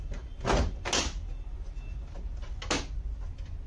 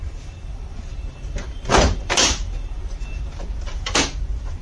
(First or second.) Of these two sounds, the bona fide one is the first